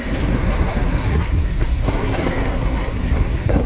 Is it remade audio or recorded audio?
remade